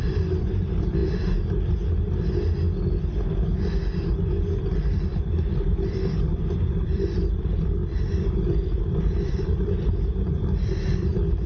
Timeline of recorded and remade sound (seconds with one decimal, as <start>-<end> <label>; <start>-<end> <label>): 0.0-1.0 remade; 1.0-4.6 recorded; 4.6-11.5 remade